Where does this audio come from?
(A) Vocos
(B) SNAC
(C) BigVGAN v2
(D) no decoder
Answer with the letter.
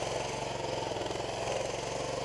D